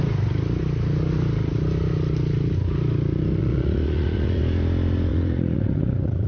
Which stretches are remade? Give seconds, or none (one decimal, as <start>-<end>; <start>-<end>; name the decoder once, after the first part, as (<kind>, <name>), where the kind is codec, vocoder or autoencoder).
3.4-4.4 (vocoder, Vocos); 5.1-6.3